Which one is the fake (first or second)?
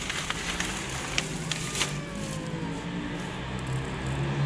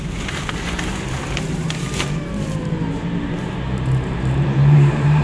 second